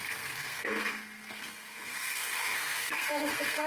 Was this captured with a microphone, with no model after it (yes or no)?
no